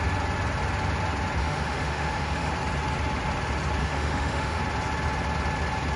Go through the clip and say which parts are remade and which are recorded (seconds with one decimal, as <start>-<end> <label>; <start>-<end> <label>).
0.0-1.4 recorded; 1.4-2.5 remade; 2.5-3.8 recorded; 3.8-4.6 remade; 4.6-6.0 recorded